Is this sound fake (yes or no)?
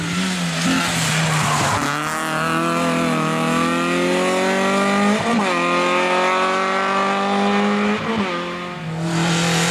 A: no